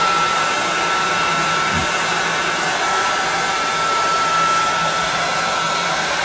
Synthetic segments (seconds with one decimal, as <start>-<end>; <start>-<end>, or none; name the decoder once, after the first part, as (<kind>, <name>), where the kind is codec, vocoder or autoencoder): none